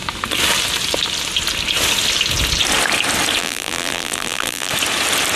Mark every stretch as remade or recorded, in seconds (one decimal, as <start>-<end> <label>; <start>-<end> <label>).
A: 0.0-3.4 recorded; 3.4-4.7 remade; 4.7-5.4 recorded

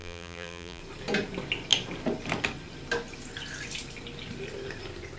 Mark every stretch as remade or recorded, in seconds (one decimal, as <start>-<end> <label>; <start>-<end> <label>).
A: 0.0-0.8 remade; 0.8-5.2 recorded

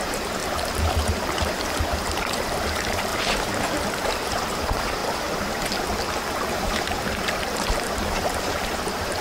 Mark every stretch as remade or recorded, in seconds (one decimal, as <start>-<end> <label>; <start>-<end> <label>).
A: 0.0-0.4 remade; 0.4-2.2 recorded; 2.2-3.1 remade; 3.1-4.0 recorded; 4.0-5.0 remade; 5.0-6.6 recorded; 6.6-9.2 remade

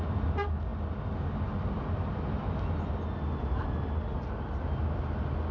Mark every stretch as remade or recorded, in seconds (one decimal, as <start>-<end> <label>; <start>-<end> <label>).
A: 0.0-5.5 recorded

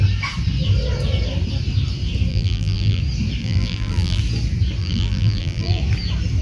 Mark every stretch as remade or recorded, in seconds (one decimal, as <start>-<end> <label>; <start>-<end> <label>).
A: 0.0-2.3 recorded; 2.3-3.0 remade; 3.0-3.4 recorded; 3.4-4.2 remade; 4.2-4.8 recorded; 4.8-5.8 remade; 5.8-6.4 recorded

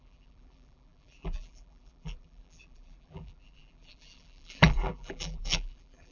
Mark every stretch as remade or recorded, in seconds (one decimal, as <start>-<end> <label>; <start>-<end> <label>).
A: 0.0-6.1 remade

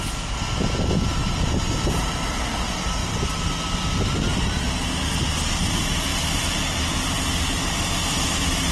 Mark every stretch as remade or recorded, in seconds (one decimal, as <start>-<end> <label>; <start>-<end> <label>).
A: 0.0-6.1 recorded; 6.1-6.7 remade; 6.7-8.7 recorded

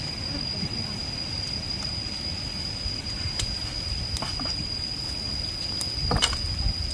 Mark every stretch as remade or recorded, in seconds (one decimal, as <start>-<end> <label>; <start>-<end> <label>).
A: 0.0-2.3 recorded; 2.3-3.6 remade; 3.6-6.9 recorded